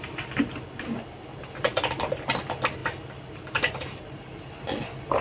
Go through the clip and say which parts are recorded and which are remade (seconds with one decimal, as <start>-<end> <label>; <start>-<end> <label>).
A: 0.0-1.7 recorded; 1.7-2.4 remade; 2.4-2.8 recorded; 2.8-4.4 remade; 4.4-5.2 recorded